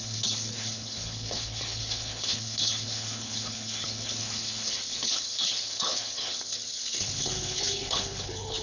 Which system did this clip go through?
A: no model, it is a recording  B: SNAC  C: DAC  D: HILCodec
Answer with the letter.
D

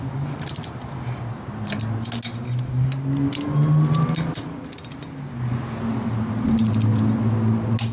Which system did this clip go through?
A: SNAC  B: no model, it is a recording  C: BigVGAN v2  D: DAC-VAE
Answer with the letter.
B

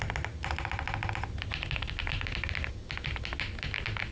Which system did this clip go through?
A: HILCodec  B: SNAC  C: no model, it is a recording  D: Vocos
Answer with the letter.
C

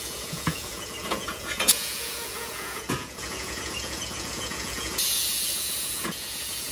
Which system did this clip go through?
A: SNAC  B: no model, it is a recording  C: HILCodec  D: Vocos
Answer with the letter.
D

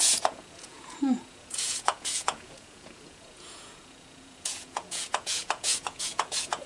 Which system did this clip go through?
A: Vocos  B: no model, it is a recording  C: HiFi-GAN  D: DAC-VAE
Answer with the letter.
A